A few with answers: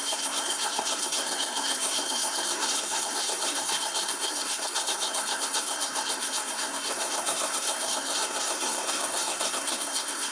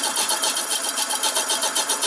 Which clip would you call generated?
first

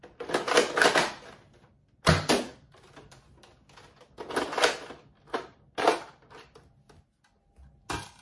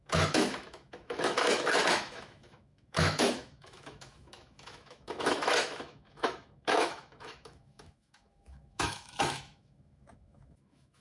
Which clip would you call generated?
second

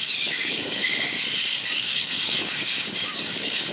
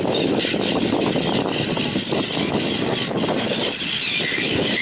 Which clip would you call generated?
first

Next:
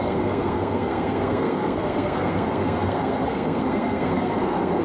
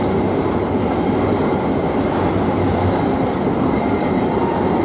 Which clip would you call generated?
first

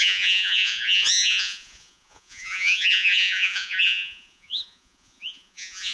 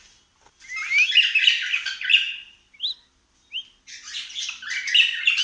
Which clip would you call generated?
first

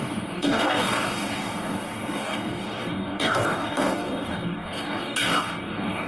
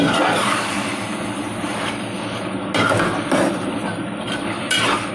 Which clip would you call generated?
first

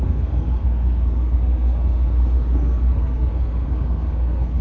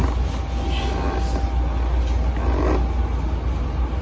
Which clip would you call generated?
first